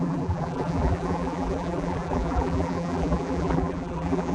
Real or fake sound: fake